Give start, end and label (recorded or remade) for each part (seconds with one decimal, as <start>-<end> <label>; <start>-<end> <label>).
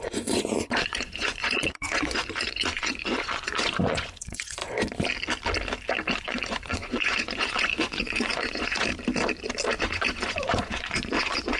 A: 0.0-4.6 remade; 4.6-6.2 recorded; 6.2-8.9 remade; 8.9-9.8 recorded; 9.8-11.6 remade